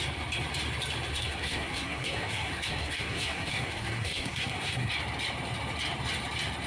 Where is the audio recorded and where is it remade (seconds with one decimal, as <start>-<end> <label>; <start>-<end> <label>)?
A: 0.0-1.1 recorded; 1.1-4.9 remade; 4.9-6.7 recorded

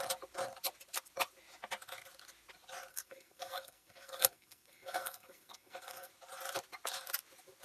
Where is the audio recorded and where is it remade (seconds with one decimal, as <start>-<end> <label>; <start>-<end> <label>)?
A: 0.0-2.9 recorded; 2.9-6.1 remade; 6.1-7.6 recorded